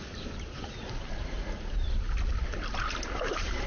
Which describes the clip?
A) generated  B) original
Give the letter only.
B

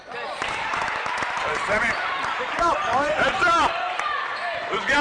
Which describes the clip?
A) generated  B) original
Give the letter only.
A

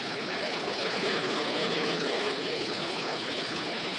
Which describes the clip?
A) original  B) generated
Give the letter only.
B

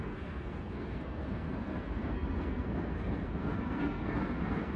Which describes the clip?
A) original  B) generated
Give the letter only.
B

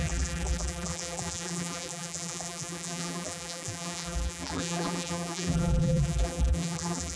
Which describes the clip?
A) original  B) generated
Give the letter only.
B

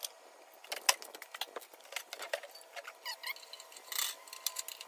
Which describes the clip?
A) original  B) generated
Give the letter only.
A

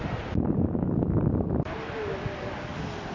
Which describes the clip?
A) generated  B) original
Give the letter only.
B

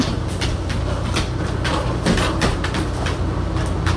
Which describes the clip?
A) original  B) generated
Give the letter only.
A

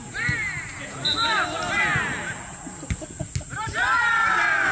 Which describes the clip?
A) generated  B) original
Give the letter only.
B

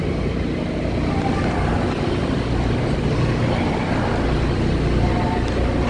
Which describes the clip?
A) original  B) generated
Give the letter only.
A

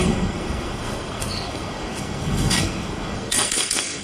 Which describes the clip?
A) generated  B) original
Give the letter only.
A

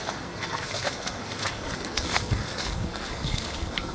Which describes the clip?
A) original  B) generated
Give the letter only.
B